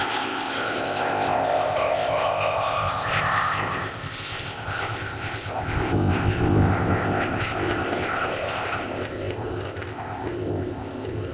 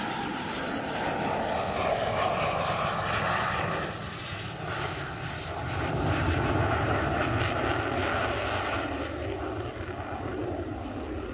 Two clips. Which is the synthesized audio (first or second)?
first